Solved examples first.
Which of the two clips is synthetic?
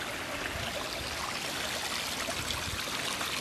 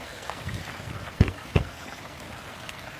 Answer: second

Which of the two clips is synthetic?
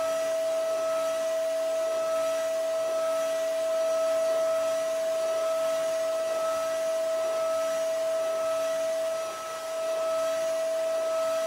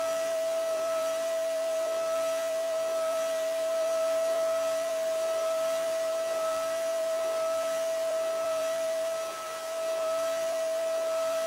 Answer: second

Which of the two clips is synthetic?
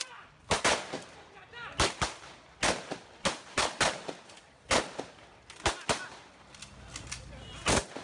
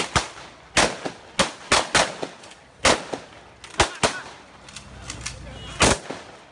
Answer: first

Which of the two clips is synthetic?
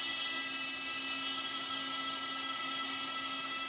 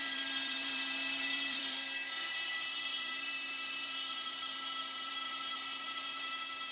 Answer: second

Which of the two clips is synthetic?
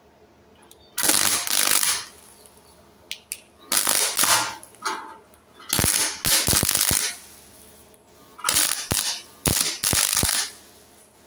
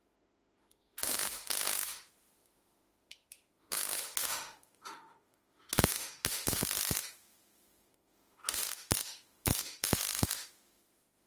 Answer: second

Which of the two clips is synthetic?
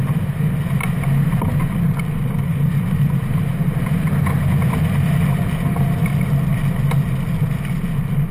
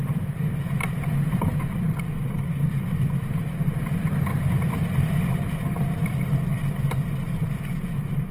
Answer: second